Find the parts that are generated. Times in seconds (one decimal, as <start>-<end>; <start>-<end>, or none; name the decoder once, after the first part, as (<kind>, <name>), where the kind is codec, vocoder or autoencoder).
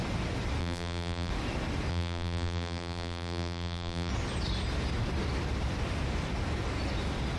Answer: 0.6-1.3 (vocoder, BigVGAN v2); 1.9-4.1